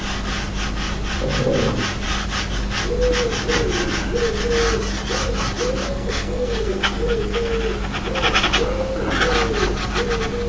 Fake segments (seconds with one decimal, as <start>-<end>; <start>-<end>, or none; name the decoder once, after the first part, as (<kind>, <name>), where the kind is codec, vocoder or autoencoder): 5.8-7.5 (codec, SNAC)